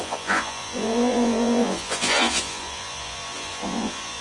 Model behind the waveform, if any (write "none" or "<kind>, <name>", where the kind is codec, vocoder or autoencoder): vocoder, Vocos